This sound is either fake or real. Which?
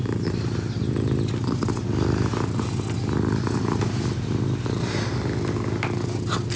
real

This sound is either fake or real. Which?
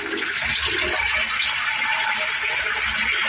real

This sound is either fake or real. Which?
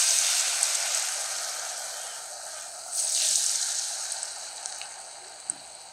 real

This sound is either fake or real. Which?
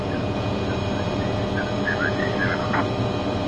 real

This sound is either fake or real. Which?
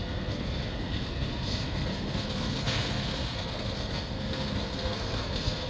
fake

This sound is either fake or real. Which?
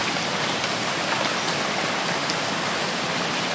real